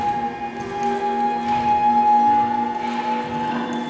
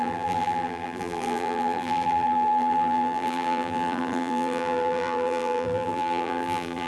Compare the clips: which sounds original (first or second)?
first